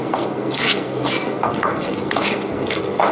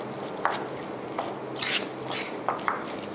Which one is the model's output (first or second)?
first